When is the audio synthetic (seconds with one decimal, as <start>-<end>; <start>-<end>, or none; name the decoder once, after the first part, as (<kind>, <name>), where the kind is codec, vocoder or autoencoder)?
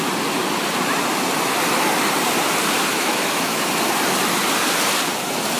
2.9-3.6 (autoencoder, DAC-VAE)